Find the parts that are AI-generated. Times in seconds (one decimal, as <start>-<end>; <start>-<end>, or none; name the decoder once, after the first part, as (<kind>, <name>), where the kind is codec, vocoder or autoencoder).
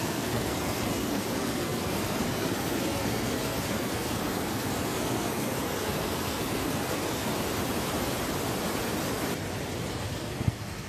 0.0-7.3 (codec, SNAC); 9.9-10.9